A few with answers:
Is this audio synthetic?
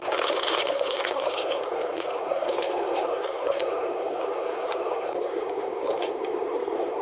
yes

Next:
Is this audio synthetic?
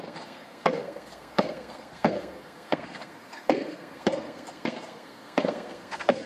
yes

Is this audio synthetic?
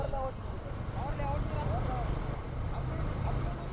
no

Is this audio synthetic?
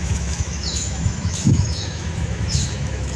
yes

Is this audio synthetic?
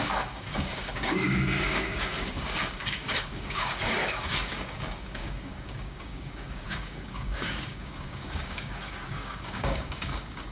yes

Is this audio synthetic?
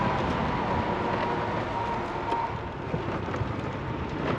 no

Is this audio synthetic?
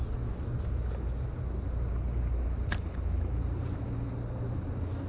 no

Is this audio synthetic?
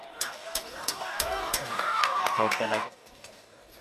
yes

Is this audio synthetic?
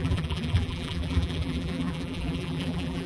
yes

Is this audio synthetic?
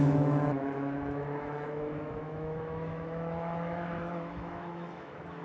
yes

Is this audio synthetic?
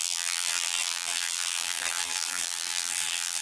yes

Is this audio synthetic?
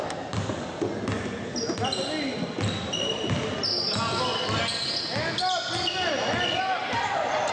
no